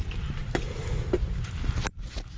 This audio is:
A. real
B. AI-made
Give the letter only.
A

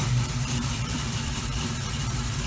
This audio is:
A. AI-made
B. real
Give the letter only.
A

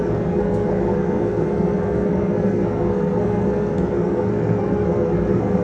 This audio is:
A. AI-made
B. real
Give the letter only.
A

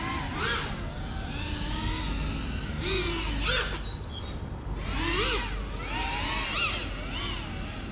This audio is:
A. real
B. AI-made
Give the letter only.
A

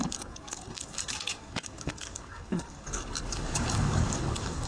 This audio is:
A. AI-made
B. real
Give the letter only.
A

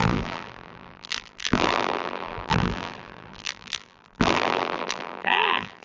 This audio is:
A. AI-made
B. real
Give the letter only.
A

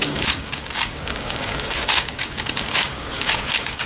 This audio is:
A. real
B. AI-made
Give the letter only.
B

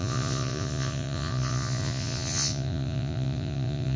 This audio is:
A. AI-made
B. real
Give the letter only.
A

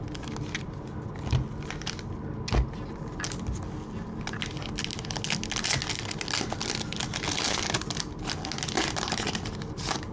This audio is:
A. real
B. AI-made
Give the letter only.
A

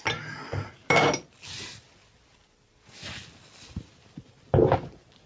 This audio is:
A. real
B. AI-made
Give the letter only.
A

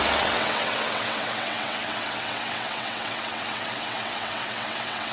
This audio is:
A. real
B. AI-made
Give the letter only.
B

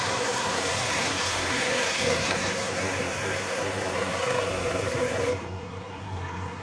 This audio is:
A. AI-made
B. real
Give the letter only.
A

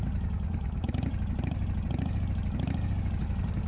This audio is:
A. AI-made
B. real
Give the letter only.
B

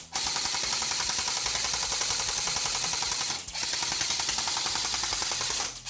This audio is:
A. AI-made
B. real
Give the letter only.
B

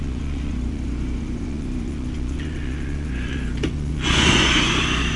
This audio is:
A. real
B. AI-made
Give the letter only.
B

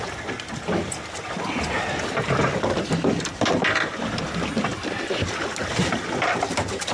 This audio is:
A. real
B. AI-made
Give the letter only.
A